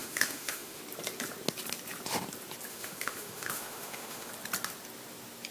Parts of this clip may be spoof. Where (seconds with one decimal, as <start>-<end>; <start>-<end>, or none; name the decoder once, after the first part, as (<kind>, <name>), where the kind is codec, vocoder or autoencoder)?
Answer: 0.0-0.8 (autoencoder, DAC-VAE); 2.7-4.3